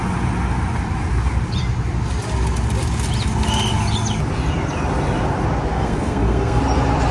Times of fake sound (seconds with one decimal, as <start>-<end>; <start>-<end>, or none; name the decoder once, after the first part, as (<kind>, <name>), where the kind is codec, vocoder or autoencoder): 5.7-6.6 (codec, SNAC)